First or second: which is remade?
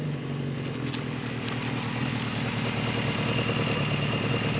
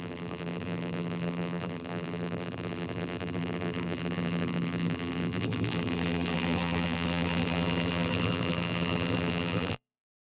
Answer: second